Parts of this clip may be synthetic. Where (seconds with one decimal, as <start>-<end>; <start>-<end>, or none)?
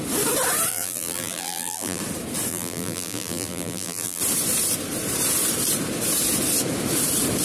0.7-2.0; 2.5-4.2